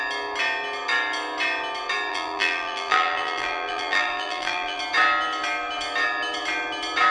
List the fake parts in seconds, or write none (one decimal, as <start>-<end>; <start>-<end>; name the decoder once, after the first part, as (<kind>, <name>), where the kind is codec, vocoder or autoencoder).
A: 2.1-4.8 (vocoder, BigVGAN v2)

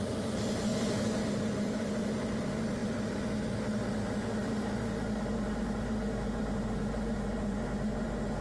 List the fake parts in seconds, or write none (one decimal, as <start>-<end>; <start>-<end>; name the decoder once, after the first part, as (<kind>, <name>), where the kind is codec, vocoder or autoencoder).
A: none

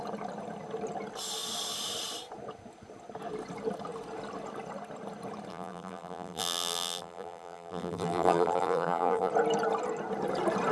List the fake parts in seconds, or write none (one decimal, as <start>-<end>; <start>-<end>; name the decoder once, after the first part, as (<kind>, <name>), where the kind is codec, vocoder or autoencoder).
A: 5.5-9.3 (vocoder, BigVGAN v2)

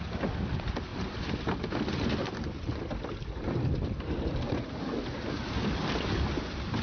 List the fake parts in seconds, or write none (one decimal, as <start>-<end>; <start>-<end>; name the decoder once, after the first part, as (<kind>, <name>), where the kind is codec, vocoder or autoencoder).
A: 0.9-4.4 (vocoder, BigVGAN v2)

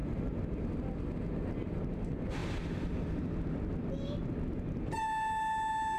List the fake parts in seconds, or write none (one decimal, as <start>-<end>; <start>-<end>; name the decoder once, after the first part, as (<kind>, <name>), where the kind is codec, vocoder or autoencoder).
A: none

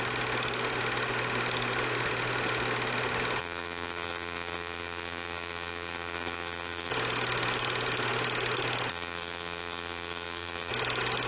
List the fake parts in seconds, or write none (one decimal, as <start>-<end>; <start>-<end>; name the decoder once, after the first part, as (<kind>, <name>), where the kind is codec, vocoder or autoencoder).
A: 3.4-6.9 (vocoder, BigVGAN v2); 8.9-10.7

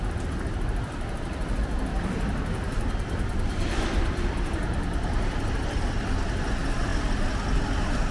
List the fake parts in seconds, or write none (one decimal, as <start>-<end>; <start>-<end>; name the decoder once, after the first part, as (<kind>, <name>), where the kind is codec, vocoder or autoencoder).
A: 1.9-5.9 (vocoder, BigVGAN v2)